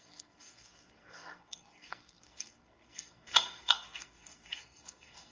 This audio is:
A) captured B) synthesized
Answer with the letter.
B